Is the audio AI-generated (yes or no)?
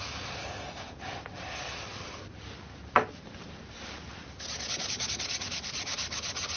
no